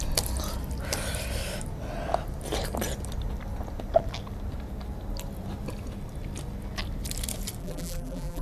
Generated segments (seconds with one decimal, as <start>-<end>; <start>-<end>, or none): 7.6-8.4